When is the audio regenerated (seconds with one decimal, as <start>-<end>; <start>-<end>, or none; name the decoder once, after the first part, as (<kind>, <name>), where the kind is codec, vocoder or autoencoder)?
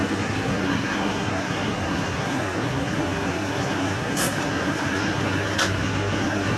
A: 0.0-6.6 (codec, SNAC)